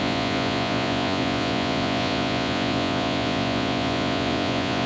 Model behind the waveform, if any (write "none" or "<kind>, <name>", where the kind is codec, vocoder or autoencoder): vocoder, Vocos